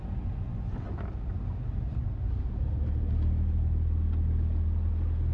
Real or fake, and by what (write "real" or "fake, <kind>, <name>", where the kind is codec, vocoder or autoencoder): real